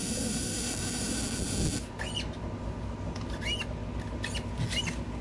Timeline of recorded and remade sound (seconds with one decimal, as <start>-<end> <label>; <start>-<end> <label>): 0.0-5.2 recorded